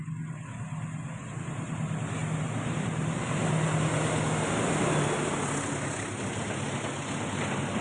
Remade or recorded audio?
recorded